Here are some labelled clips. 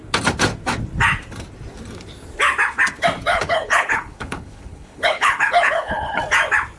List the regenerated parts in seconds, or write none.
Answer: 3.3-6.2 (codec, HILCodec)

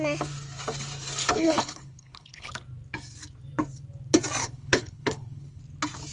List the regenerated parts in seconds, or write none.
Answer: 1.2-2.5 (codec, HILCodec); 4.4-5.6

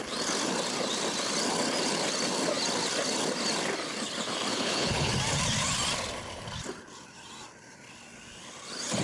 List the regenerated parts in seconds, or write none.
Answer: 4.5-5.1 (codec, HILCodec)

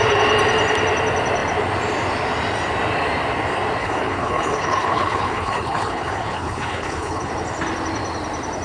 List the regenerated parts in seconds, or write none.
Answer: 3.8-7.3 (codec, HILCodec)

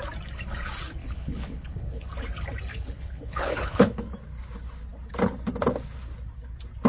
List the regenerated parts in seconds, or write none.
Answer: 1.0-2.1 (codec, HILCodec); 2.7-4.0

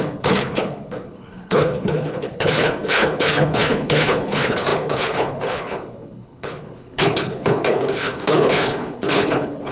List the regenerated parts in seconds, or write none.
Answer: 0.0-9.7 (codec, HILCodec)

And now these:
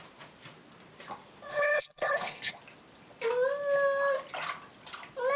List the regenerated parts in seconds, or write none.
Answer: 1.5-2.5 (codec, HILCodec)

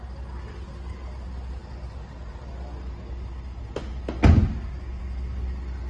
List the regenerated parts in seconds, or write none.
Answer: none